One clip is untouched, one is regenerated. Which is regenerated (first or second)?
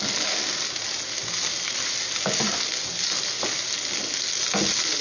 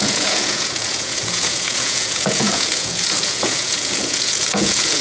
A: second